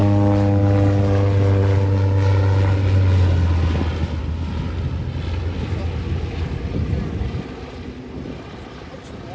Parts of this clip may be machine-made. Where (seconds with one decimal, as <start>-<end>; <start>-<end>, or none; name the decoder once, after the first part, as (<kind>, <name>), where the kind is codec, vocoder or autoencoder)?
none